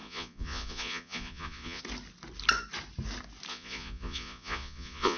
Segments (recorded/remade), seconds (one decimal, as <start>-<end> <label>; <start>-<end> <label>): 0.0-1.8 remade; 1.8-3.5 recorded; 3.5-5.2 remade